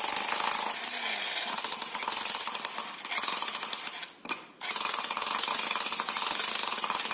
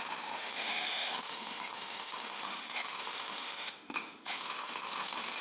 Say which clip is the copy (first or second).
second